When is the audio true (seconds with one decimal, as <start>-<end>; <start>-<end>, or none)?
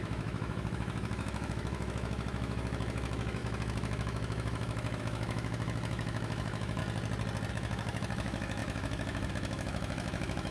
6.8-7.5